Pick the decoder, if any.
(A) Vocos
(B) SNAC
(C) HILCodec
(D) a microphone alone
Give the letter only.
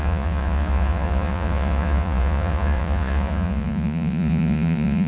A